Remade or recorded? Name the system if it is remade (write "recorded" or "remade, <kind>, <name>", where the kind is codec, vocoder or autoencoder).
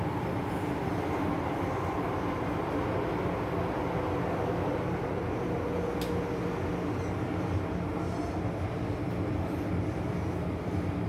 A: recorded